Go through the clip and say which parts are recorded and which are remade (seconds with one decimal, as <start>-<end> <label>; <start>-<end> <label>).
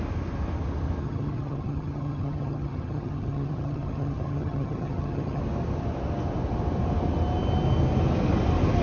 0.0-1.0 recorded; 1.0-5.4 remade; 5.4-8.8 recorded